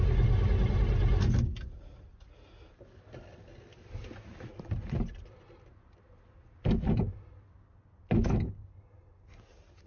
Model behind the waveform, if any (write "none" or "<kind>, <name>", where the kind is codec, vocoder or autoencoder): none